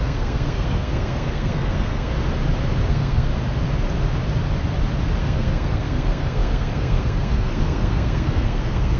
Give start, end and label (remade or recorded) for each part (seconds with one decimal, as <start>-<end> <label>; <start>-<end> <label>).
0.0-2.1 remade; 2.1-2.9 recorded; 2.9-3.3 remade; 3.3-5.2 recorded; 5.2-9.0 remade